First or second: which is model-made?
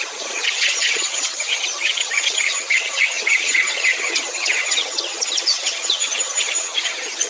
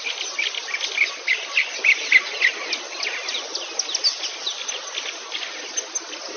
first